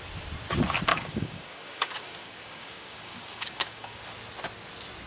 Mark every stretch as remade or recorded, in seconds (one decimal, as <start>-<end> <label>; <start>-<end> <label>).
0.0-0.9 recorded; 0.9-4.0 remade; 4.0-5.1 recorded